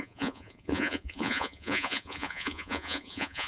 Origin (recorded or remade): remade